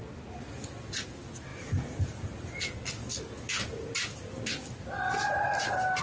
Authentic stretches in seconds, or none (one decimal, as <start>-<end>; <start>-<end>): 0.0-6.0